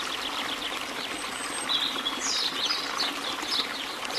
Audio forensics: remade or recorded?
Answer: recorded